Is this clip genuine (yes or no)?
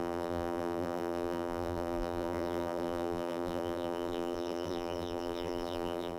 no